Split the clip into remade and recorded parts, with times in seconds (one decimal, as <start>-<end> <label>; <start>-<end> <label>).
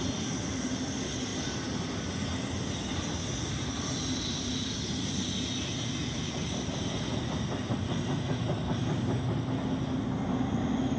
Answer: 0.0-11.0 recorded